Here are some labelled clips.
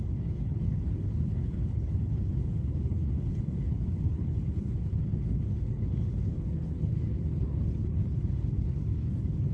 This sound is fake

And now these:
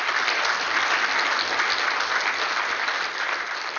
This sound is real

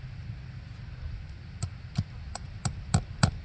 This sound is real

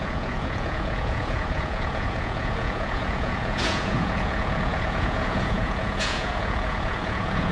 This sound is fake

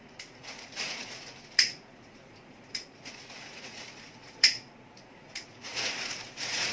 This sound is fake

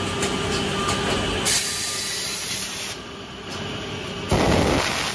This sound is real